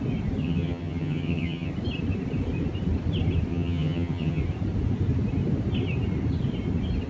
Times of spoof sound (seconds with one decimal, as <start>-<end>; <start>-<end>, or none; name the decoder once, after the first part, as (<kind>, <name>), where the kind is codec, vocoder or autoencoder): 0.4-1.7 (vocoder, HiFi-GAN); 3.5-4.4